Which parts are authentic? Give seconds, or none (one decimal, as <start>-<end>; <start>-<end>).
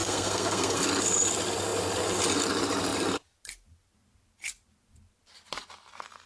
0.8-6.3